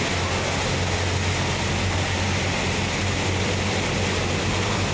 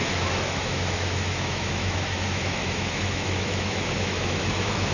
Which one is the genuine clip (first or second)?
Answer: first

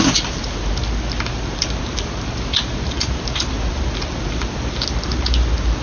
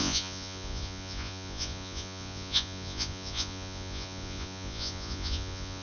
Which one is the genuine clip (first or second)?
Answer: first